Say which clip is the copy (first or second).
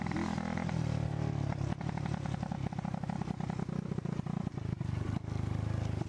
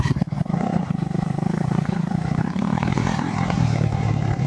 second